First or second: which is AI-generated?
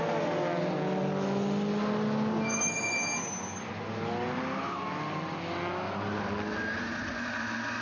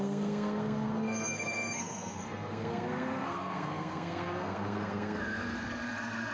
second